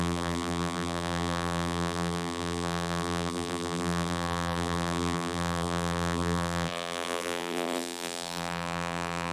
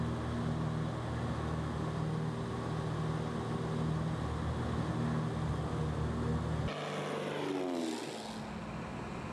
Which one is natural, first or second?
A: second